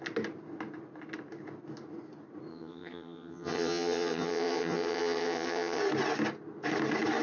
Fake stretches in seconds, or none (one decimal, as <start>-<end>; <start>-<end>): 2.5-5.8